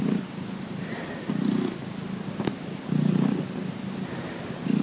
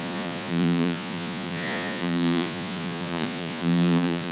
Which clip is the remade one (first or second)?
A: second